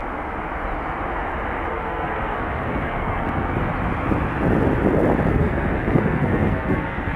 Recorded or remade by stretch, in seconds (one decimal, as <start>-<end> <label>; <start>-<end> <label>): 0.0-1.7 recorded; 1.7-3.7 remade; 3.7-5.3 recorded; 5.3-7.2 remade